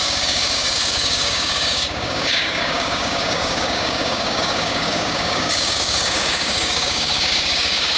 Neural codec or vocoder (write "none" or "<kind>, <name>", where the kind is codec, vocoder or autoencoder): codec, DAC